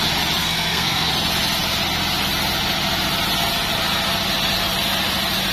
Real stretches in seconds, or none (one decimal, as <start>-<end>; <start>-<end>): 0.0-0.4; 1.1-5.5